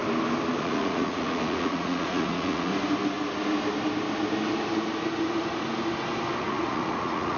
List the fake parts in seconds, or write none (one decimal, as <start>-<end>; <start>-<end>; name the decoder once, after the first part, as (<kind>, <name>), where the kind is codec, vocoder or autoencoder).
0.6-2.7 (vocoder, Vocos); 6.4-7.4